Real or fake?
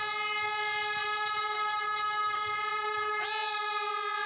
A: real